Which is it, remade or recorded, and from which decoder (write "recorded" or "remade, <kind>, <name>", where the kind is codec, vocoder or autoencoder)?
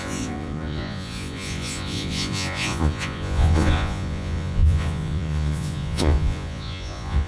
remade, vocoder, Vocos